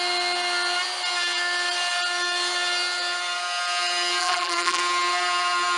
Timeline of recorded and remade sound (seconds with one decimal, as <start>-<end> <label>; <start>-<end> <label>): 0.0-4.2 recorded; 4.2-4.8 remade; 4.8-5.8 recorded